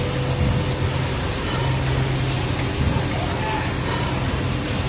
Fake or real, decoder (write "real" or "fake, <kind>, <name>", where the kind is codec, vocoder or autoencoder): real